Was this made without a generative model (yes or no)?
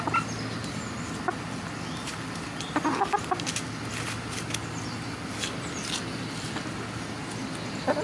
yes